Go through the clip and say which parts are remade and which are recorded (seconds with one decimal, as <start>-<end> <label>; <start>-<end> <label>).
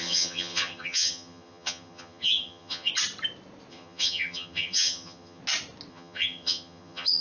0.0-2.9 remade; 2.9-3.7 recorded; 3.7-5.4 remade; 5.4-5.9 recorded; 5.9-7.2 remade